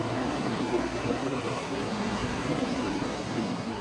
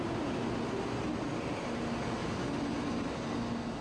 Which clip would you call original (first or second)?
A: second